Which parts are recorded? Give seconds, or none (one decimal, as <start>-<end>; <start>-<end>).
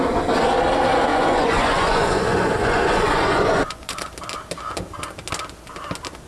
0.0-1.1; 4.1-6.3